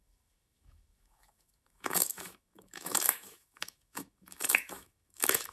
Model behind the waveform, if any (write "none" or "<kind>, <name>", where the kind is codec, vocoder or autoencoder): autoencoder, DAC-VAE